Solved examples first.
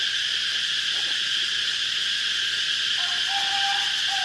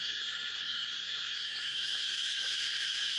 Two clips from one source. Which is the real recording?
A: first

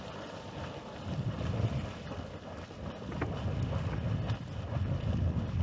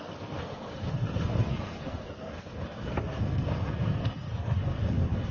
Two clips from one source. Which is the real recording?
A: first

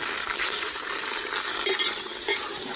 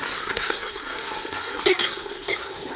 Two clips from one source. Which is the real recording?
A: first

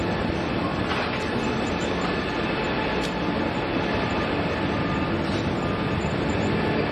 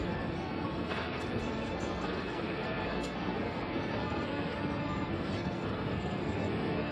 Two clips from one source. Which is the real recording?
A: first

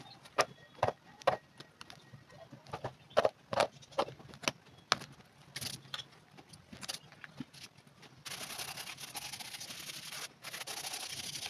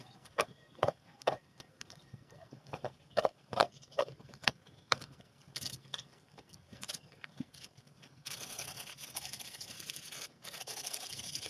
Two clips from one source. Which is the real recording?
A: first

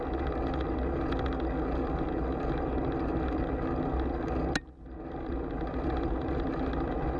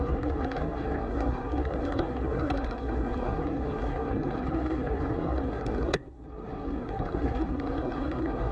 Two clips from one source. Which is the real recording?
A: first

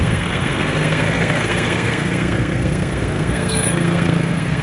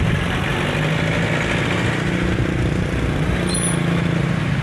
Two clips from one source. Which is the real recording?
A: second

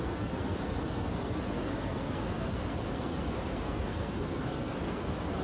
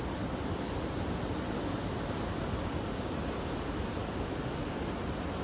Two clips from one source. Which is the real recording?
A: second